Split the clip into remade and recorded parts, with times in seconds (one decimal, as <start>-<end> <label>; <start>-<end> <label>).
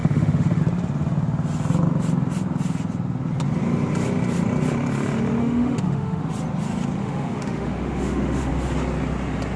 0.0-0.6 remade; 0.6-5.4 recorded; 5.4-6.2 remade; 6.2-7.0 recorded; 7.0-8.5 remade; 8.5-9.6 recorded